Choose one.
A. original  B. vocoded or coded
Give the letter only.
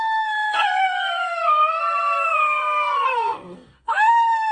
B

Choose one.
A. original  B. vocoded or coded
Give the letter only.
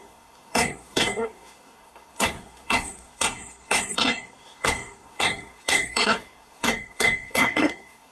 B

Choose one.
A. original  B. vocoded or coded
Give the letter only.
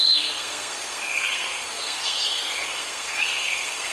B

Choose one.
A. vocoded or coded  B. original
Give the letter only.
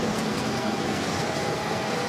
A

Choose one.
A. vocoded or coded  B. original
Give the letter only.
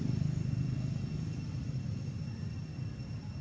B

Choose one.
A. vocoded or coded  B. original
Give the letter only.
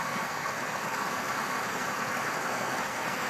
A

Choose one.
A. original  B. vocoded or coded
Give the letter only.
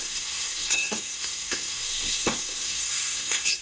B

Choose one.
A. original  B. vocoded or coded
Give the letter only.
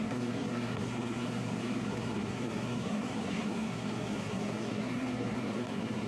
B